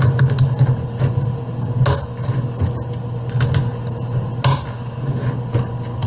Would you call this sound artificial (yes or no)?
no